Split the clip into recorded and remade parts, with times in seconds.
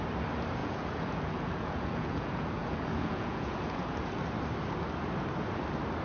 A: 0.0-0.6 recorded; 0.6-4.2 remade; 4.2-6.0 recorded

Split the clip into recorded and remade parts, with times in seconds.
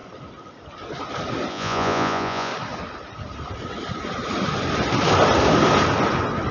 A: 0.0-1.5 recorded; 1.5-2.5 remade; 2.5-6.5 recorded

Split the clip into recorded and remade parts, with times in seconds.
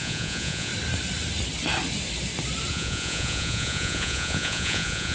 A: 0.0-0.7 remade; 0.7-2.7 recorded; 2.7-5.1 remade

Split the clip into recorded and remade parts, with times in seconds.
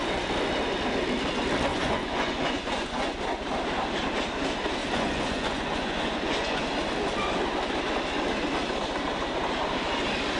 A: 0.0-1.7 recorded; 1.7-3.2 remade; 3.2-4.8 recorded; 4.8-6.6 remade; 6.6-10.4 recorded